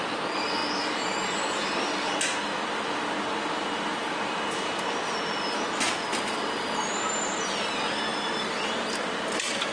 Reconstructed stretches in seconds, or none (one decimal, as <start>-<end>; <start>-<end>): none